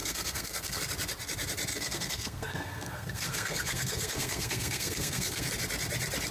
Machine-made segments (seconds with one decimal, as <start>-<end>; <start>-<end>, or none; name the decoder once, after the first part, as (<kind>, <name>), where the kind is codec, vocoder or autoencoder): 0.0-0.8 (codec, SNAC); 1.7-5.5